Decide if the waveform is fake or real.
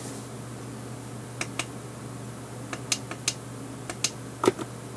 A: real